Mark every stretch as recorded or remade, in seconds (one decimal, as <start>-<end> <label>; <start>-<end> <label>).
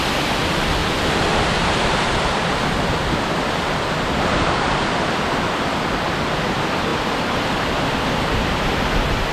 0.0-0.8 remade; 0.8-5.8 recorded; 5.8-9.3 remade